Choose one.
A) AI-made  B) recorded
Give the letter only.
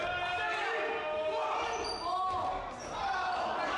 B